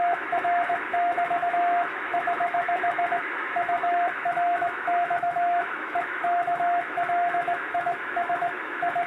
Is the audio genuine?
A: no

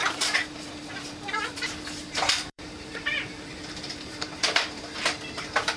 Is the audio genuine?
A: no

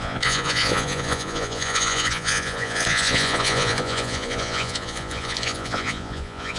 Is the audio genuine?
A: no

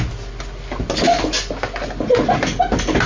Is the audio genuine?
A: yes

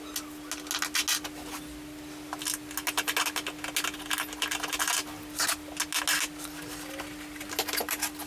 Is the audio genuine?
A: yes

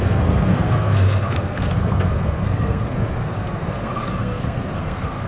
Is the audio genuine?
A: no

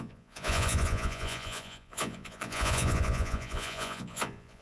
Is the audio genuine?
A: no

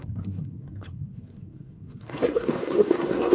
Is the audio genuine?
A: no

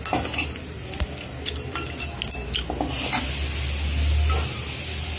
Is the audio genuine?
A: yes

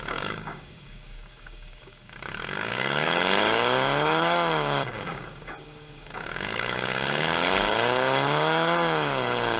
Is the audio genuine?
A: no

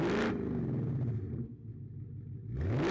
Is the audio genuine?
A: yes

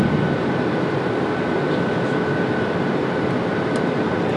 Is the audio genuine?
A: yes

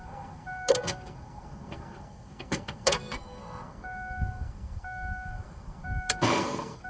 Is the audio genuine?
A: no